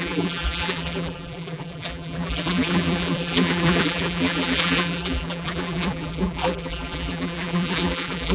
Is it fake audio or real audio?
fake